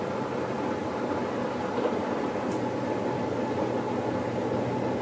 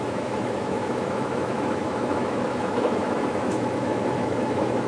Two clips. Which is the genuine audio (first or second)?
first